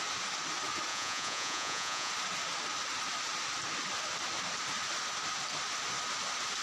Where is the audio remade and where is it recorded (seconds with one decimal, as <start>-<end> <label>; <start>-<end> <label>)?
0.0-0.9 recorded; 0.9-2.1 remade; 2.1-6.6 recorded